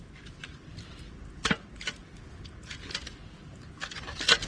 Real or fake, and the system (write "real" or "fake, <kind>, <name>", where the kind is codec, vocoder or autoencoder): real